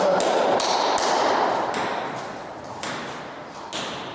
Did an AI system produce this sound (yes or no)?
no